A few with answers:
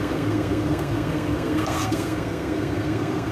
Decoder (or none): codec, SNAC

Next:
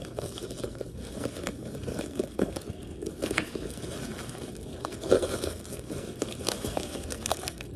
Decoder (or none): codec, SNAC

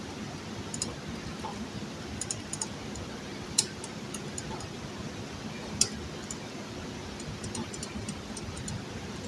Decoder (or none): none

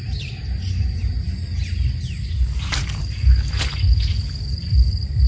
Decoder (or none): none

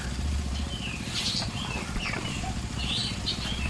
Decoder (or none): none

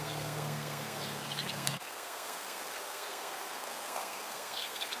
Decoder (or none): codec, SNAC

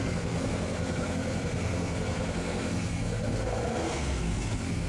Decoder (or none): codec, SNAC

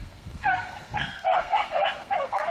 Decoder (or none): codec, SNAC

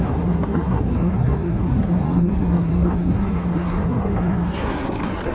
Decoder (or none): codec, SNAC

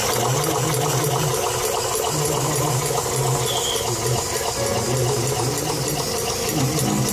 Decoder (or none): none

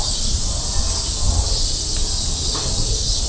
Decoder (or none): none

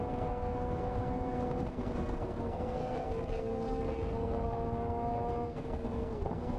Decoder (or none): codec, SNAC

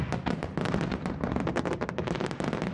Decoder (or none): none